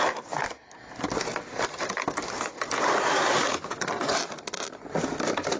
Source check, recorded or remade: recorded